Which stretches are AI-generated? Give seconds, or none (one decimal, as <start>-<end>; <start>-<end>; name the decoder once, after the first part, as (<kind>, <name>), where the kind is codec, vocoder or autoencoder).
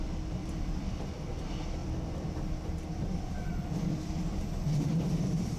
0.0-5.6 (vocoder, BigVGAN v2)